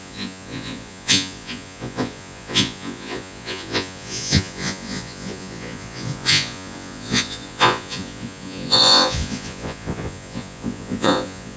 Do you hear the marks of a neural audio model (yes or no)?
yes